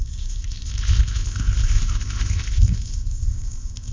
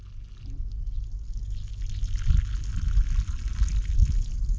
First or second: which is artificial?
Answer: first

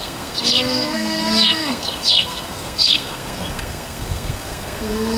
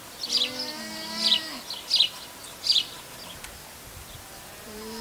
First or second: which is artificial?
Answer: first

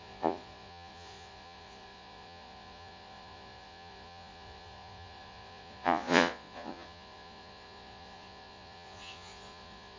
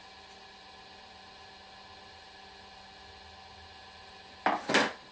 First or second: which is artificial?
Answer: first